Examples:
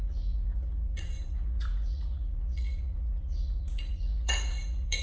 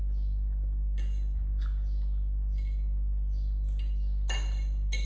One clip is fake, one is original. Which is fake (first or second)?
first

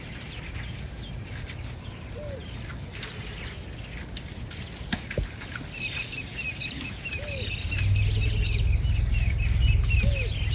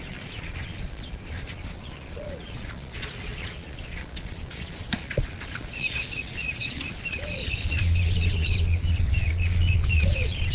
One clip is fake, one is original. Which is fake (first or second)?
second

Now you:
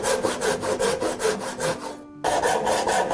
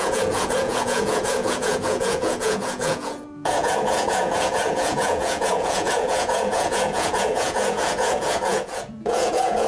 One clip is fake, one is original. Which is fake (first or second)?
second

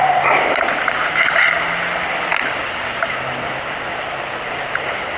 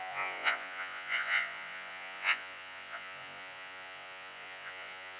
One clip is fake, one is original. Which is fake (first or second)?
second